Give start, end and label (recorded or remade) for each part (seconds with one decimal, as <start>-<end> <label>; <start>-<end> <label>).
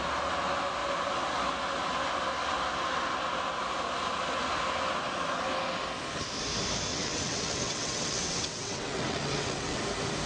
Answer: 0.0-6.9 recorded; 6.9-9.8 remade; 9.8-10.3 recorded